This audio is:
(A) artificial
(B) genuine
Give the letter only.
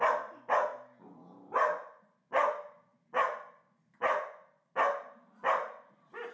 B